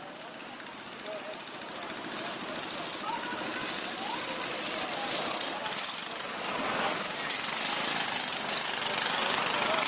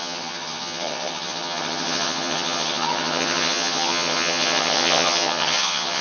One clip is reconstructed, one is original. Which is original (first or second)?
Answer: first